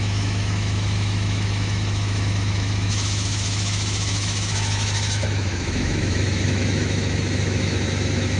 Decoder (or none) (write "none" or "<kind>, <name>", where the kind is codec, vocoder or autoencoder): autoencoder, DAC-VAE